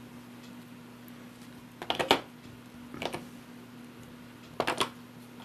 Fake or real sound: real